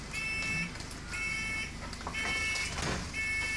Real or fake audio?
real